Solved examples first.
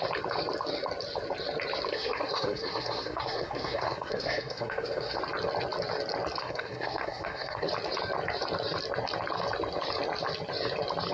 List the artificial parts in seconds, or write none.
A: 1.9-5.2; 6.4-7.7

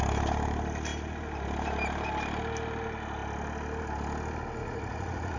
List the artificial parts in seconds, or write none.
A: 4.6-5.4

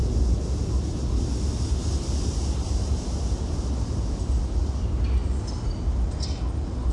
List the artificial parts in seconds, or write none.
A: 1.8-4.6

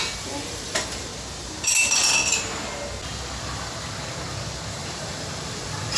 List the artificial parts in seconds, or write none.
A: 0.0-1.1; 4.7-6.0

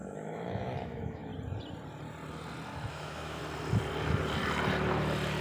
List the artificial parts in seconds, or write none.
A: 0.0-1.3; 2.9-3.4